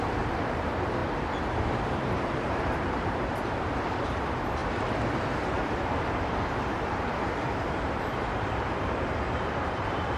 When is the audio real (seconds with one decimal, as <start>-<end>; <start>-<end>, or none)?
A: 1.0-1.5; 4.6-5.6